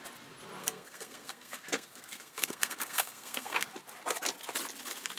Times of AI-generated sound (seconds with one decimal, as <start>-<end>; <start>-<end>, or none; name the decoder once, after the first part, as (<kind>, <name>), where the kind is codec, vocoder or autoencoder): 0.6-3.7 (codec, SNAC)